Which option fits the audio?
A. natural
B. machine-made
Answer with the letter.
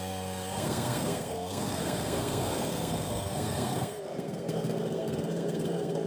B